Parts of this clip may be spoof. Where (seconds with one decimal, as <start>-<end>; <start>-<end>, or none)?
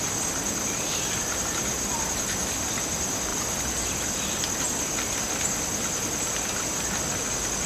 none